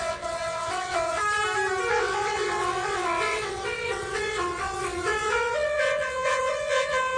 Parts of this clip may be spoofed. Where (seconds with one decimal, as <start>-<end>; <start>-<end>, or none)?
0.0-1.2; 1.9-7.2